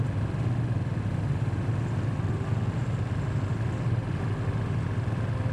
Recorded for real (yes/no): yes